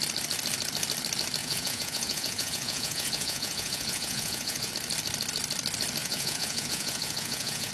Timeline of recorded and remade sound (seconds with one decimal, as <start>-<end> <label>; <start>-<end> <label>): 0.0-1.4 recorded; 1.4-4.7 remade; 4.7-6.0 recorded; 6.0-7.7 remade